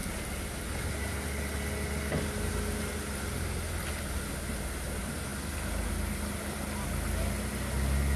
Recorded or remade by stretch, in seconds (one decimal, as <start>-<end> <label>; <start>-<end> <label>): 0.0-8.2 recorded